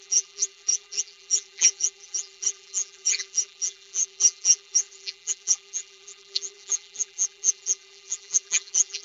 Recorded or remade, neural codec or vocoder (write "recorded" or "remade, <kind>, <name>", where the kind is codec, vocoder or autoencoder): remade, vocoder, BigVGAN v2